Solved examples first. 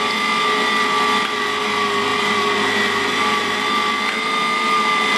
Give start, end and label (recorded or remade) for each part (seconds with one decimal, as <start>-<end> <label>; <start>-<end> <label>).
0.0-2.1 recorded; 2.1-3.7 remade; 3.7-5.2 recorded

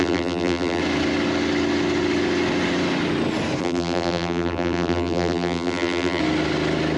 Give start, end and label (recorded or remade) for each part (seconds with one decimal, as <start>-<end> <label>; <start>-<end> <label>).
0.0-0.8 remade; 0.8-3.6 recorded; 3.6-6.2 remade; 6.2-7.0 recorded

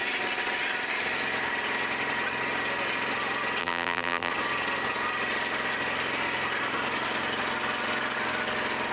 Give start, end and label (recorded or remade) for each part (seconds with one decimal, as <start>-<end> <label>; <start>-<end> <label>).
0.0-3.6 recorded; 3.6-4.3 remade; 4.3-8.9 recorded

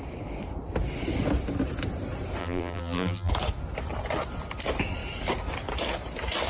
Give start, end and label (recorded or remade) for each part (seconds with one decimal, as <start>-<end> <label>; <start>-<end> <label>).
0.0-2.4 recorded; 2.4-3.3 remade; 3.3-6.5 recorded

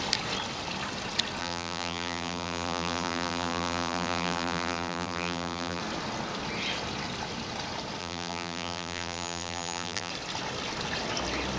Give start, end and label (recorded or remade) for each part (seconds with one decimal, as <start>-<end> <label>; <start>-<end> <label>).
0.0-1.4 recorded; 1.4-5.8 remade; 5.8-8.0 recorded; 8.0-10.1 remade; 10.1-11.6 recorded